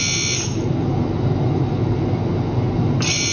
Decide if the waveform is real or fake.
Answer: real